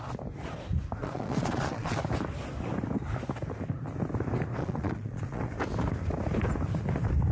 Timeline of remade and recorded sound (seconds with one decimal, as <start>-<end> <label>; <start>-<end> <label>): 0.0-1.0 recorded; 1.0-2.0 remade; 2.0-4.6 recorded; 4.6-5.4 remade; 5.4-7.3 recorded